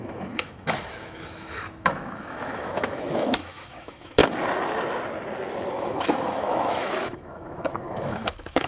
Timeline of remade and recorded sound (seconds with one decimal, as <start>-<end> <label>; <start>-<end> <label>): 0.0-4.2 remade; 4.2-5.7 recorded; 5.7-8.7 remade